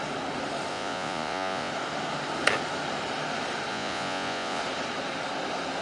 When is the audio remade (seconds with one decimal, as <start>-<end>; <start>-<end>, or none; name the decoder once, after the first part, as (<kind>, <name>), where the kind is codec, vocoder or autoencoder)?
0.7-1.7 (vocoder, Vocos); 3.7-4.6